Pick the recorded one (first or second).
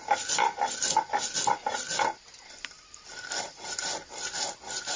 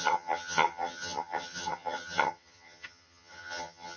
first